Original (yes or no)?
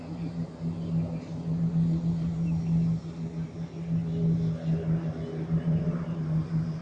yes